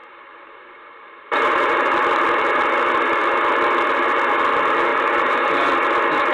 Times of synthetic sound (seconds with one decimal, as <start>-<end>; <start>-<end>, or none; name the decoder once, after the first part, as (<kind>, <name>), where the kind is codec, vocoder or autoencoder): 0.0-2.2 (vocoder, BigVGAN v2); 4.9-5.7